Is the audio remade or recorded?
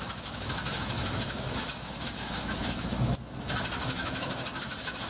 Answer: remade